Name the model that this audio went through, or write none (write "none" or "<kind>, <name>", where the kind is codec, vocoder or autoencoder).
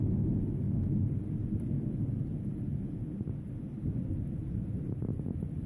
none